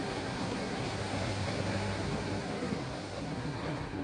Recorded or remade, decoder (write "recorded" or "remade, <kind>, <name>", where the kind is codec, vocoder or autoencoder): remade, codec, SNAC